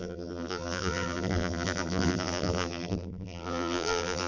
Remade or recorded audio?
remade